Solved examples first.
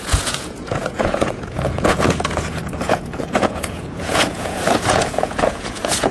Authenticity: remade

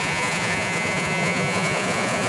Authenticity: remade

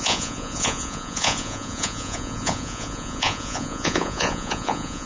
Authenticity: remade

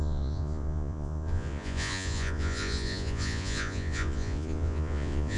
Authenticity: remade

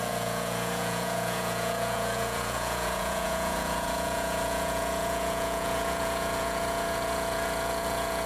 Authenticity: remade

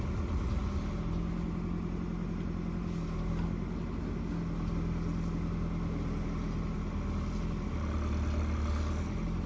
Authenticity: recorded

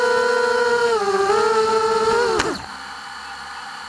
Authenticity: recorded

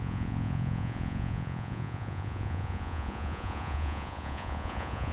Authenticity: remade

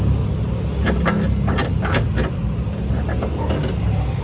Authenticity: recorded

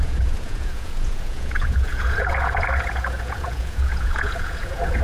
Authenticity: remade